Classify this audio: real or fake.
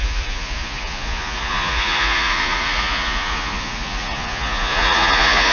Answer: fake